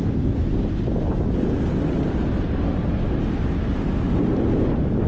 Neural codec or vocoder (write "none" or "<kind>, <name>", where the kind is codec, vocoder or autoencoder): none